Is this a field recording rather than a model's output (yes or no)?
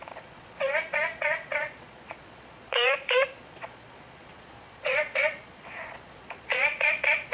no